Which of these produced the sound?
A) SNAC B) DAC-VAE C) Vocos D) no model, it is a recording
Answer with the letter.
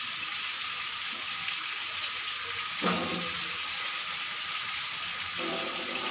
D